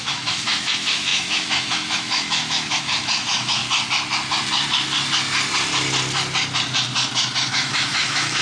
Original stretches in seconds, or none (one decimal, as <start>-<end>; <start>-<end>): 3.6-7.5